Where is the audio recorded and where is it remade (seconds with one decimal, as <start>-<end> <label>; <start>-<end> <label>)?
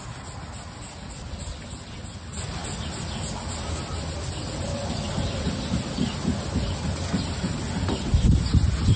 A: 0.0-9.0 recorded